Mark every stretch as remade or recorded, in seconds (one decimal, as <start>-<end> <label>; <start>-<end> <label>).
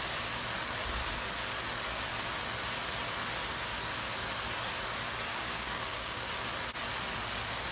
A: 0.0-5.3 recorded; 5.3-6.3 remade; 6.3-7.7 recorded